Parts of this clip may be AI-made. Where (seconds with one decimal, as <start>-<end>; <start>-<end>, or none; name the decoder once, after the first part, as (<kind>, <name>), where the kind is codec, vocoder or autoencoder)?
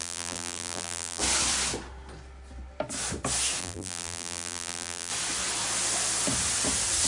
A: 0.0-1.2 (vocoder, BigVGAN v2); 3.6-5.1